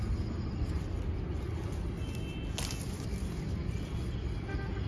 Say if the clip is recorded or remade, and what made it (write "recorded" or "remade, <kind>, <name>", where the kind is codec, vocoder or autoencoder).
recorded